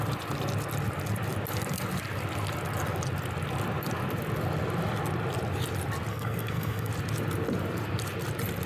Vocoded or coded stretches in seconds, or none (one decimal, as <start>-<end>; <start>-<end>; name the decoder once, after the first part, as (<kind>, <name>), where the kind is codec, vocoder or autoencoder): 6.1-6.9 (codec, SNAC)